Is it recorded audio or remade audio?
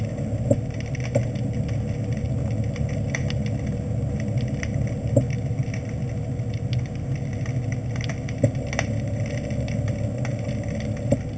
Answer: recorded